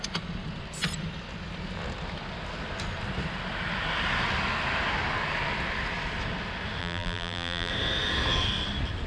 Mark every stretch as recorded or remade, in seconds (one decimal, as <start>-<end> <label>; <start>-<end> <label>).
0.0-6.8 recorded; 6.8-7.7 remade; 7.7-9.1 recorded